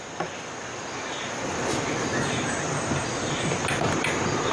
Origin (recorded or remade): recorded